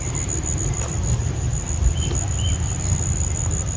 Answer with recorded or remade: recorded